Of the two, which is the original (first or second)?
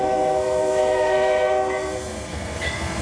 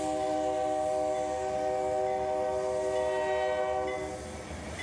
second